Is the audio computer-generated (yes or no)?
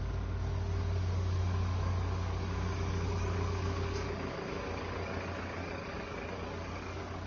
yes